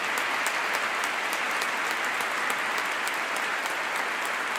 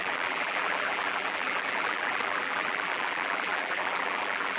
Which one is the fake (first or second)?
second